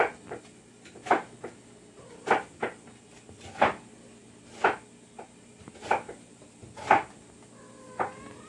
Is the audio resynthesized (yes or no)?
no